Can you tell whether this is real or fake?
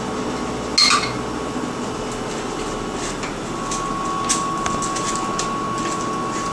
real